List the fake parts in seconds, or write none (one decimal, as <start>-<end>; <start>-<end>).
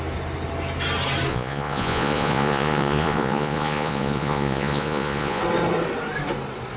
1.3-5.4